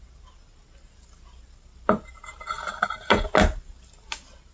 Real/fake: real